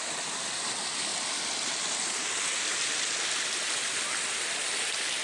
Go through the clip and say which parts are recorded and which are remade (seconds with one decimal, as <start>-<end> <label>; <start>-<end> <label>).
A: 0.0-5.2 recorded